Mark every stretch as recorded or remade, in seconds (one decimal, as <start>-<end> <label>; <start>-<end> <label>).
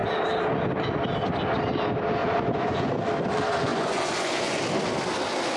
0.0-2.2 recorded; 2.2-2.9 remade; 2.9-3.7 recorded; 3.7-4.6 remade; 4.6-5.6 recorded